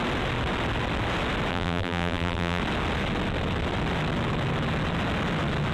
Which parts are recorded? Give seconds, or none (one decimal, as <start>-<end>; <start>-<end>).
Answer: 0.0-1.5; 2.6-5.7